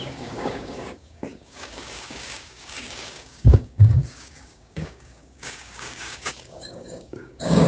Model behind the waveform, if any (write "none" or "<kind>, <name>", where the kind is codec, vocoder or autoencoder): codec, DAC